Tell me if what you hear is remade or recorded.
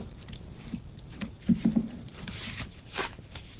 remade